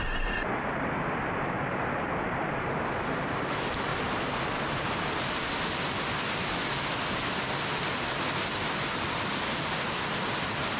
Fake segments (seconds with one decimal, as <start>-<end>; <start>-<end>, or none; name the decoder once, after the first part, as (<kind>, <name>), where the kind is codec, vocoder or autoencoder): none